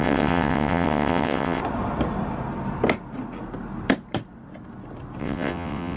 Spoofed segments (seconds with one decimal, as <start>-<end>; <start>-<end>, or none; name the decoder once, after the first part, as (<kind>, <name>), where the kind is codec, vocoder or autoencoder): 0.0-1.6 (vocoder, WaveNeXt); 5.2-6.0